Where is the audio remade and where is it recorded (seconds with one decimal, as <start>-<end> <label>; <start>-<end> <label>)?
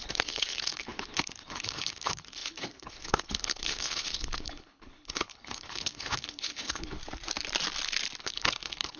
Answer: 0.0-7.0 remade; 7.0-8.2 recorded; 8.2-9.0 remade